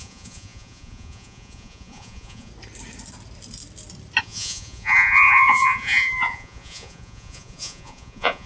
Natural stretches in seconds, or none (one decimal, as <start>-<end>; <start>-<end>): 2.5-4.2